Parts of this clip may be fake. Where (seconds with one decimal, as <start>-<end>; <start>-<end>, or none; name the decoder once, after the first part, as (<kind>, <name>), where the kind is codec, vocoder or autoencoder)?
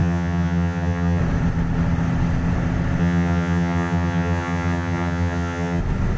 0.0-1.2 (vocoder, HiFi-GAN); 3.0-5.8